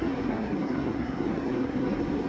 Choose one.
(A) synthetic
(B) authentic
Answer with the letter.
A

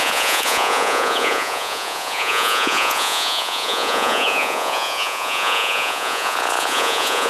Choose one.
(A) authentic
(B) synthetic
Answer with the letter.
B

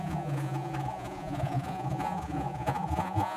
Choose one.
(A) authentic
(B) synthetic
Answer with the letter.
B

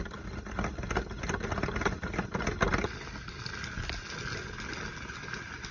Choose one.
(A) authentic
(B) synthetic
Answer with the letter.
A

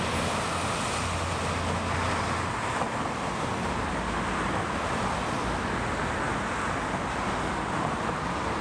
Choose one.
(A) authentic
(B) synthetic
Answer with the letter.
A